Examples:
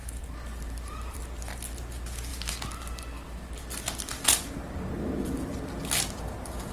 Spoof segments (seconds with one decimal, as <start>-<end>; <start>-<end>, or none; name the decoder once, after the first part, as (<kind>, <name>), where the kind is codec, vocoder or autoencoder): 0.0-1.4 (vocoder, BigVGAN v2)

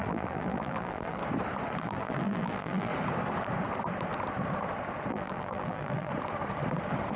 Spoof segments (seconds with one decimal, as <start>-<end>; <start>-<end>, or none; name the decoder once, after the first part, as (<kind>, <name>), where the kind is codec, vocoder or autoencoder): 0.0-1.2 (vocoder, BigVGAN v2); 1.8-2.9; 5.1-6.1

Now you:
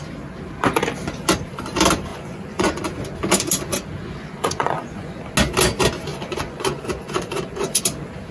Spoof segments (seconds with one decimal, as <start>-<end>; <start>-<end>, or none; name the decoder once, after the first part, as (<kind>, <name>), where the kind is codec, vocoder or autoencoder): 2.1-2.8 (vocoder, Vocos); 4.0-5.2; 6.1-7.8

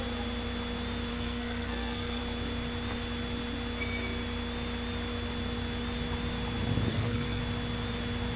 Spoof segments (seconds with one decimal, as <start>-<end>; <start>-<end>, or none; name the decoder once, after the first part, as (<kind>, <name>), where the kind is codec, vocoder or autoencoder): 1.1-2.2 (codec, SNAC); 6.9-7.4